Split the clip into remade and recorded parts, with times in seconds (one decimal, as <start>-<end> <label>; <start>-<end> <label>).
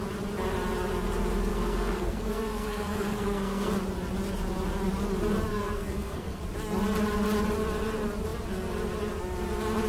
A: 0.0-1.5 recorded; 1.5-3.7 remade; 3.7-5.5 recorded; 5.5-6.4 remade; 6.4-9.9 recorded